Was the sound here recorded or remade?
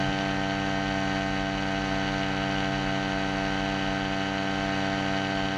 recorded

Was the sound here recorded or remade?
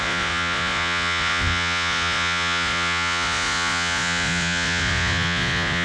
remade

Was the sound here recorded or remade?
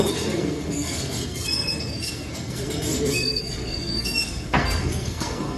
remade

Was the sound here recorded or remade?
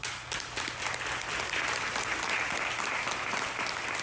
recorded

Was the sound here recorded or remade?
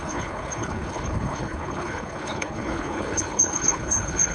remade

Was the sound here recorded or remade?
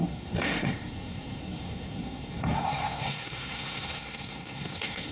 remade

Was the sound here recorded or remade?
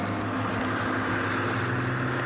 recorded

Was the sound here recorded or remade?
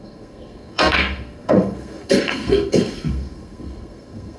remade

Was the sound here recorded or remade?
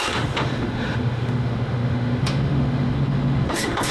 remade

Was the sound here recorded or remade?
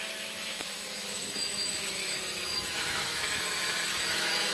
remade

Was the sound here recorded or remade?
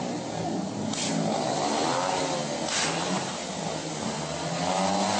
recorded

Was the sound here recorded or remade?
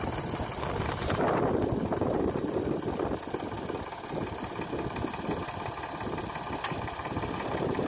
recorded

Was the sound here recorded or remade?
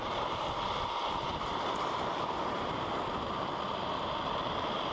remade